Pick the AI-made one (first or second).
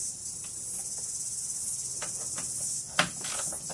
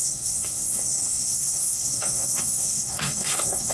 second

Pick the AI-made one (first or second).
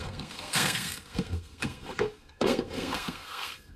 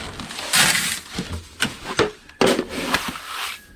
first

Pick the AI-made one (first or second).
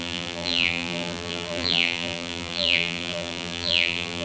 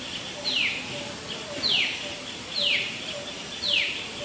first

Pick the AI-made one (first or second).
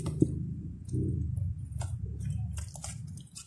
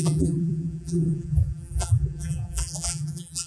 second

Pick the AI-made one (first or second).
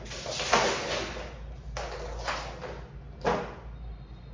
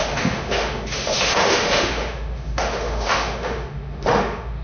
second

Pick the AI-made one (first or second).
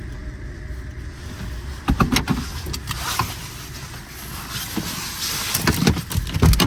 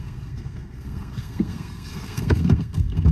second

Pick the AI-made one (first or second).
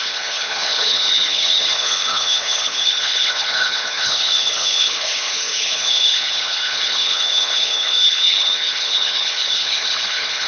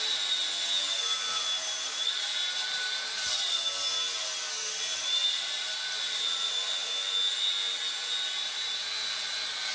first